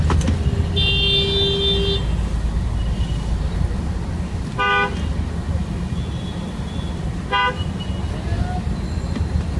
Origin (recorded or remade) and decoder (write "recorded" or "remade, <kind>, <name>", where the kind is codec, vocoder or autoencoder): recorded